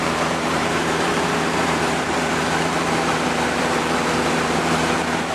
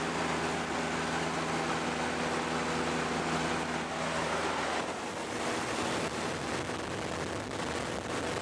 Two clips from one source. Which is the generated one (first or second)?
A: first